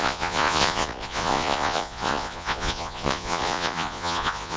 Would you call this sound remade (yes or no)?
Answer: yes